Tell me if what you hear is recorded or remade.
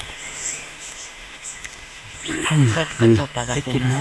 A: remade